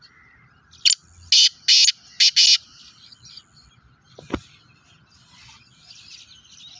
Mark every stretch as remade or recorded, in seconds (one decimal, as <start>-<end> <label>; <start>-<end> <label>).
0.0-6.8 recorded